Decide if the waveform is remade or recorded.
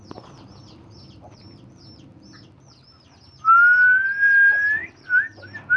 recorded